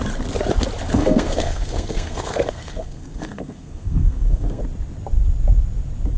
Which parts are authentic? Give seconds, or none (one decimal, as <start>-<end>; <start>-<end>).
0.0-0.9; 4.6-6.2